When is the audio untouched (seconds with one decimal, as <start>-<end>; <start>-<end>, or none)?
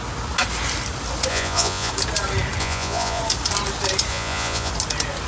0.0-1.3; 1.9-2.6; 3.2-4.1; 4.7-5.3